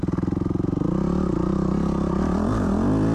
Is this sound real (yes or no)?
yes